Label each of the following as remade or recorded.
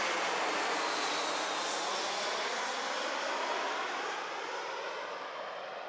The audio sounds recorded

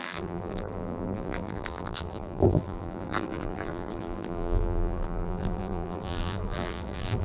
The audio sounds remade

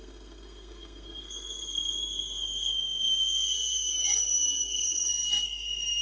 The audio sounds remade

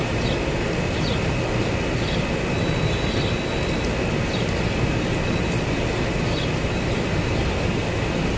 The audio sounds recorded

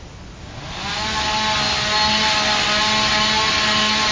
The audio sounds recorded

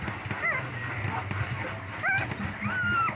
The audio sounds recorded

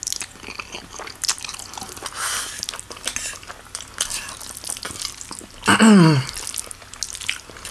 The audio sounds recorded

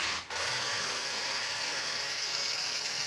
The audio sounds remade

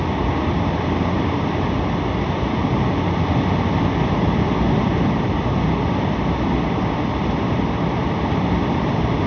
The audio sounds recorded